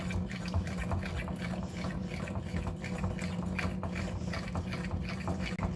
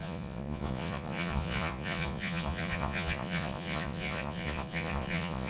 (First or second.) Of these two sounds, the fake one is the second